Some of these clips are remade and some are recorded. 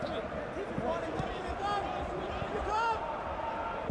recorded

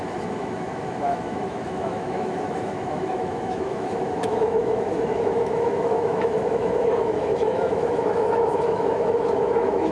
remade